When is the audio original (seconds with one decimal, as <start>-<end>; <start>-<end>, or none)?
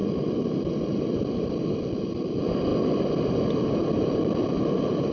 0.0-5.1